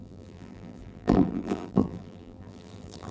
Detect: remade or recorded remade